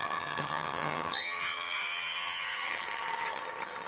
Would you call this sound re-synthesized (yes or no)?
yes